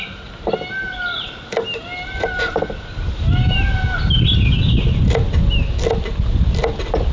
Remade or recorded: recorded